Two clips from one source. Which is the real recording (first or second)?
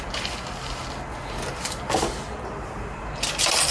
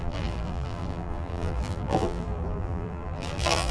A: first